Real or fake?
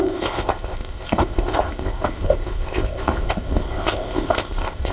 fake